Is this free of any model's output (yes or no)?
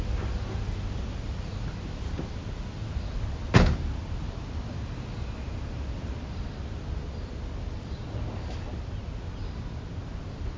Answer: yes